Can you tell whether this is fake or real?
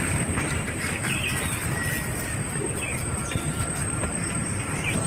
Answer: real